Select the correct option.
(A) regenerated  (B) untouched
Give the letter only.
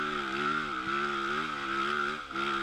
B